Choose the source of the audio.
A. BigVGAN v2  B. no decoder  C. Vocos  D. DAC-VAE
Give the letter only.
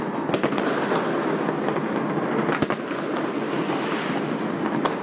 B